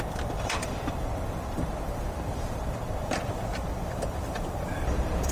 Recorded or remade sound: remade